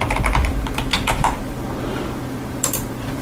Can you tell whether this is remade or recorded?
remade